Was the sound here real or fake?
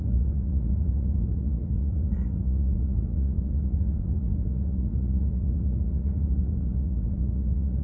fake